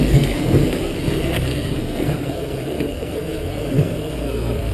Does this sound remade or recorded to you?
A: remade